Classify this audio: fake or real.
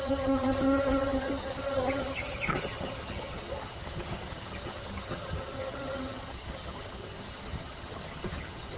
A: fake